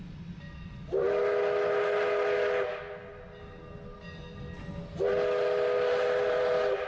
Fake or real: real